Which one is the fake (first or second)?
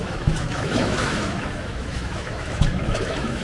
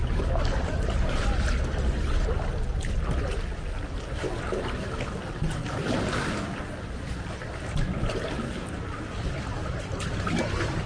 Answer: first